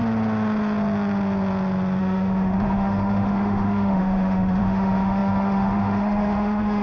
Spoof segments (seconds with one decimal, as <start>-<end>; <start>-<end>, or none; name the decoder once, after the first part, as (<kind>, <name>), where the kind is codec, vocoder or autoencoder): 2.0-6.8 (autoencoder, DAC-VAE)